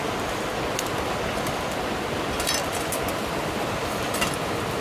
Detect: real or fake real